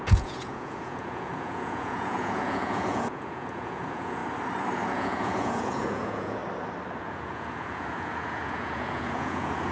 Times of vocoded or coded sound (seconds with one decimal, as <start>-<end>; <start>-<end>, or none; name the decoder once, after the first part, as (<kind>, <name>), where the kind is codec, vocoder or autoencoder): 0.0-4.2 (vocoder, Vocos); 4.9-6.4; 7.0-9.7

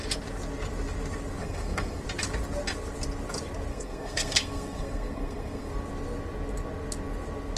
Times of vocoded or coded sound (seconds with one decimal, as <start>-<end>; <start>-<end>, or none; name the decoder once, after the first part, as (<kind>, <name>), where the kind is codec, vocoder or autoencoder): 1.4-2.0 (codec, SNAC); 3.7-5.7

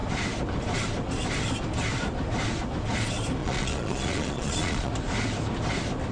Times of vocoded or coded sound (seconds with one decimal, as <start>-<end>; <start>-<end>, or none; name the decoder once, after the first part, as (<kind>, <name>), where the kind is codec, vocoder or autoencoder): 3.4-4.9 (vocoder, Vocos)

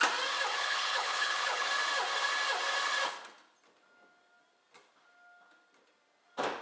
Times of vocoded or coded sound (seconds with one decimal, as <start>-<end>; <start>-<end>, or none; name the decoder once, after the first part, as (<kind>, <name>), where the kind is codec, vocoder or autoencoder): 0.5-1.7 (codec, HILCodec)

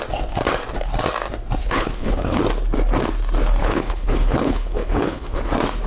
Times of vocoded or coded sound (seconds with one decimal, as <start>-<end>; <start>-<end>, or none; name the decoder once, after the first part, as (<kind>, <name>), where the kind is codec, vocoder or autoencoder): 1.6-2.4 (codec, HILCodec); 3.6-5.4